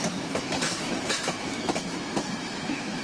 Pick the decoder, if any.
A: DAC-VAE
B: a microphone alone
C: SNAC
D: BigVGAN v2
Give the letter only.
A